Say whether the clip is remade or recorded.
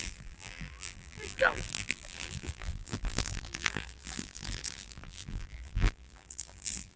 remade